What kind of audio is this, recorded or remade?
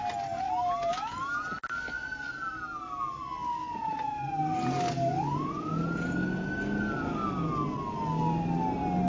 recorded